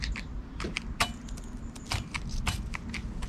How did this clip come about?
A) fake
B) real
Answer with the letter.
B